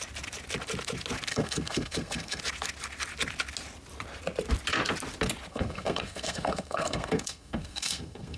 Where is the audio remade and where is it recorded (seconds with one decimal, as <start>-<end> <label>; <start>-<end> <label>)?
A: 0.0-1.3 recorded; 1.3-2.4 remade; 2.4-5.5 recorded; 5.5-8.4 remade

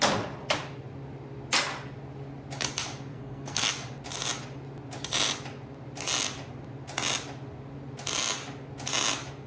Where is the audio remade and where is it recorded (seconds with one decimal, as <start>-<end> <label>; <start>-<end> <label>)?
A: 0.0-3.1 recorded; 3.1-3.7 remade; 3.7-9.5 recorded

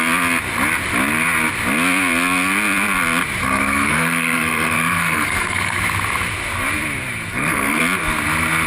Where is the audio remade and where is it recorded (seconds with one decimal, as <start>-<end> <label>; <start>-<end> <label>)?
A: 0.0-3.4 recorded; 3.4-5.8 remade; 5.8-7.3 recorded; 7.3-7.8 remade; 7.8-8.7 recorded

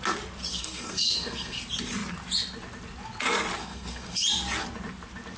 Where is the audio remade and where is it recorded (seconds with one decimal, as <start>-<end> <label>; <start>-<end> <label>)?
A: 0.0-0.5 recorded; 0.5-1.6 remade; 1.6-3.6 recorded; 3.6-4.2 remade; 4.2-5.4 recorded

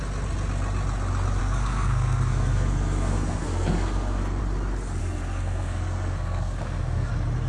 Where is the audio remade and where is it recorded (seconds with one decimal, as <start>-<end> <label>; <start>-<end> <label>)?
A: 0.0-1.4 recorded; 1.4-4.4 remade; 4.4-5.0 recorded; 5.0-7.1 remade; 7.1-7.5 recorded

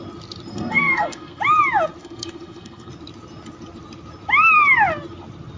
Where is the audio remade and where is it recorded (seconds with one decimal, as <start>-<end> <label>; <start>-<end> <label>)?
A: 0.0-0.5 recorded; 0.5-1.4 remade; 1.4-2.0 recorded; 2.0-2.9 remade; 2.9-5.6 recorded